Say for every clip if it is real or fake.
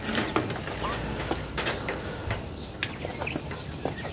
real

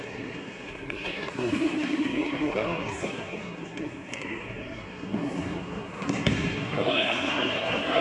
fake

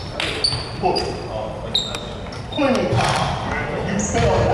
real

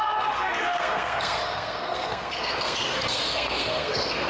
fake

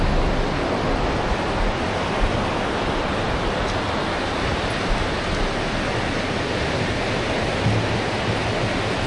real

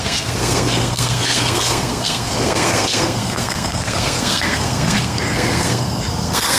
fake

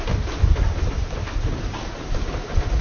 real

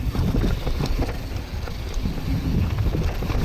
real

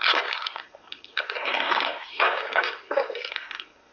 fake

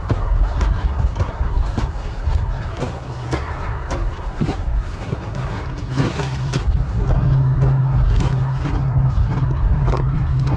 fake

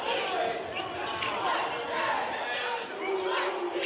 real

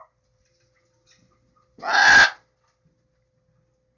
real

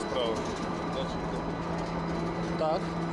real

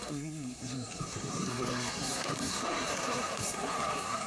fake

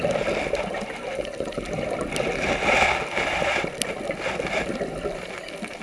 real